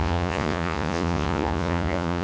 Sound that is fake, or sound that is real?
fake